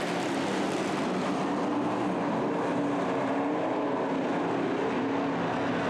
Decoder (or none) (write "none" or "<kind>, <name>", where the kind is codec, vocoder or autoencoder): none